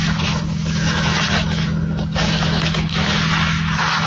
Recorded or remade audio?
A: remade